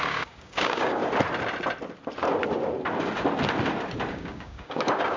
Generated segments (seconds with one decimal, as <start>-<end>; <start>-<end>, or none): 0.0-1.0; 4.1-5.2